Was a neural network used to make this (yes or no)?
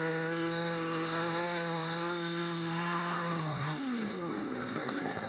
yes